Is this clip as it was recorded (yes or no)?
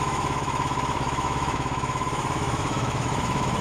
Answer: no